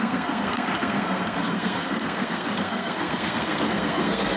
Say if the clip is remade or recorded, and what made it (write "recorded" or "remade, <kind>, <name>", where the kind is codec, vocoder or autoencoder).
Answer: remade, codec, SNAC